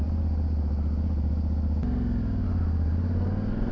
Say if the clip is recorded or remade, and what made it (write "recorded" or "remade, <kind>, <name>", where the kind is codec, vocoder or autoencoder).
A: recorded